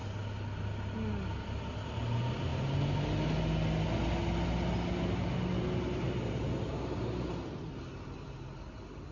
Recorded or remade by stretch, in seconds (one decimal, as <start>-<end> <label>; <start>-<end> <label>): 0.0-9.1 recorded